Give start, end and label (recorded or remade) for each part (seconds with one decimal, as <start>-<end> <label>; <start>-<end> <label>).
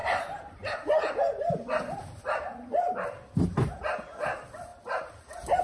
0.0-5.6 recorded